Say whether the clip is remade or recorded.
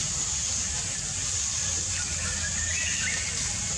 recorded